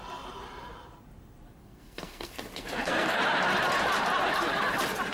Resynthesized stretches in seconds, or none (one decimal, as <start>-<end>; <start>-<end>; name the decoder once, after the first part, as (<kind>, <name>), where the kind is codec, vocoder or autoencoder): 1.6-3.2 (codec, SNAC)